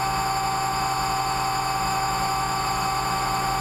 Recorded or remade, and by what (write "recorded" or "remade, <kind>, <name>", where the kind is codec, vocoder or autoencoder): remade, autoencoder, DAC-VAE